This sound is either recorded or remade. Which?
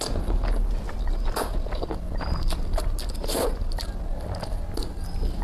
recorded